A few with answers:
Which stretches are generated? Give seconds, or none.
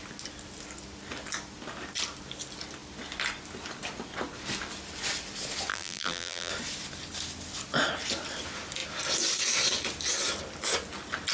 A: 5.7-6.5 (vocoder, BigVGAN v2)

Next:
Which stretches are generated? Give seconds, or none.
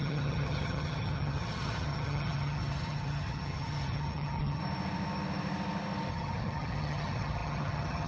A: 0.0-4.6 (vocoder, HiFi-GAN); 6.1-8.1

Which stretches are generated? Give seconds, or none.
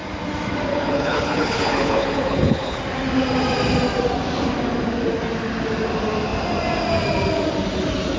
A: 0.7-2.8 (codec, HILCodec)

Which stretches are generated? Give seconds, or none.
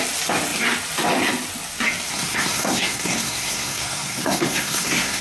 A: 2.1-5.2 (codec, SNAC)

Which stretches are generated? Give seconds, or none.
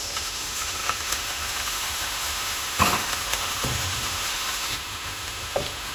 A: 0.0-5.9 (autoencoder, DAC-VAE)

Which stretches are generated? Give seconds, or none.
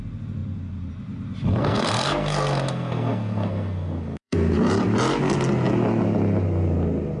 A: 1.6-4.5 (codec, SNAC)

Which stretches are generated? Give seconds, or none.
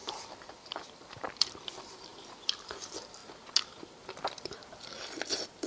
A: 0.0-3.2 (vocoder, BigVGAN v2); 4.0-5.7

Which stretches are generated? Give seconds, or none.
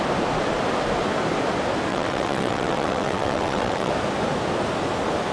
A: 1.9-3.9 (vocoder, WaveNeXt)